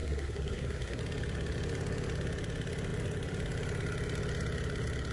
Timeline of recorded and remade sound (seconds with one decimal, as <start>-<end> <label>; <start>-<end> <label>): 0.0-1.0 remade; 1.0-5.1 recorded